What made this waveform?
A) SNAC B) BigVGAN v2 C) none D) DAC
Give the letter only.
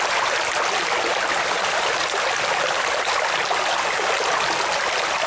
C